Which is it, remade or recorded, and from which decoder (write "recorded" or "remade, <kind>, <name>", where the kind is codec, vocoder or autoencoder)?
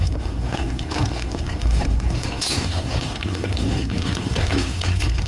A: remade, codec, SNAC